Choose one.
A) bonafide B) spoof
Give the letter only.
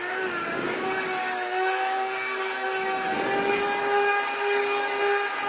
B